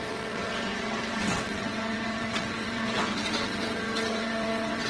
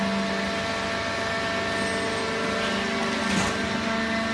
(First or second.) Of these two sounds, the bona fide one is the second